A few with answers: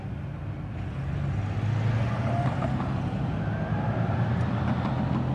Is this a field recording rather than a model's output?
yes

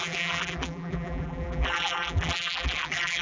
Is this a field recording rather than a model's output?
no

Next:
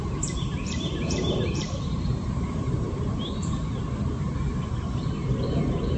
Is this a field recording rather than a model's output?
no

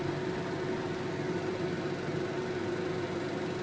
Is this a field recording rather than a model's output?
yes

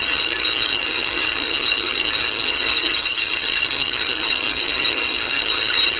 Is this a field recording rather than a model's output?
no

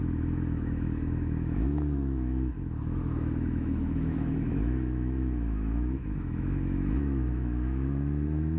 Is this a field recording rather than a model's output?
no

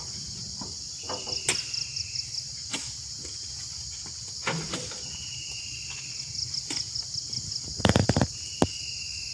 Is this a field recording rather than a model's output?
yes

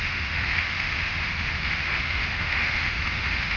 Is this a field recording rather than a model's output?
no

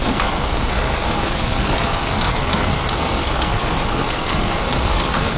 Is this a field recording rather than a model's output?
no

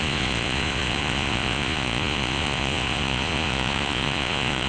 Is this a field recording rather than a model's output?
no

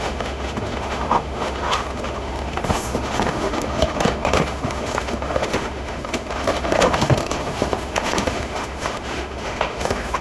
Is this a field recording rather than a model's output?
no